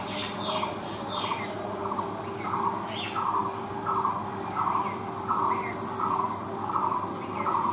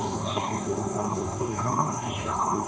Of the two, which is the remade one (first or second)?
second